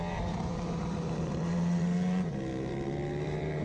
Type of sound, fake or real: fake